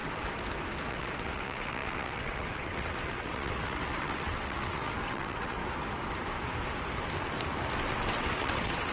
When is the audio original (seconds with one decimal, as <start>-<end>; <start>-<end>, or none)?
0.0-0.9; 5.6-7.9